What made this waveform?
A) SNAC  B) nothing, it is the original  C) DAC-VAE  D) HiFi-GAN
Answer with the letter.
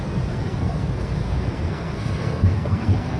A